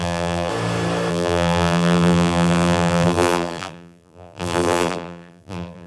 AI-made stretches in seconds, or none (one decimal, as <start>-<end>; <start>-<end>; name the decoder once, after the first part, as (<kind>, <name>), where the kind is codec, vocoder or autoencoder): 0.0-0.5 (vocoder, BigVGAN v2); 1.1-5.9